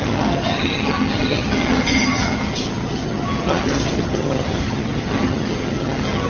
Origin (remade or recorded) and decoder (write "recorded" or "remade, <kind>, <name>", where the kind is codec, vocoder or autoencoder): remade, vocoder, HiFi-GAN